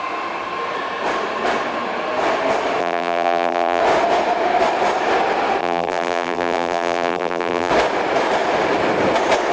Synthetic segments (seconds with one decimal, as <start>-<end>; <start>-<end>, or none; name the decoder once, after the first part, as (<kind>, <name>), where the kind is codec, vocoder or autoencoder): 2.8-3.8 (vocoder, BigVGAN v2); 5.6-7.7